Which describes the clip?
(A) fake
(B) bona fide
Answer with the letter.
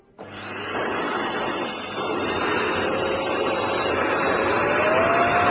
B